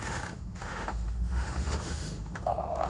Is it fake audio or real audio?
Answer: fake